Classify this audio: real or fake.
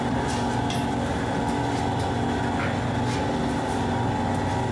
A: real